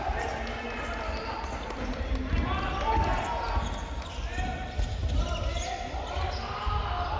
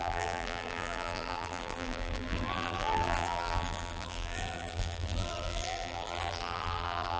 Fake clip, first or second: second